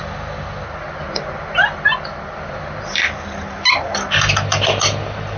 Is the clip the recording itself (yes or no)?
yes